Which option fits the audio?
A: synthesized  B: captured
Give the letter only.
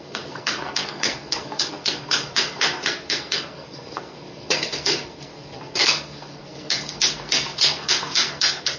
A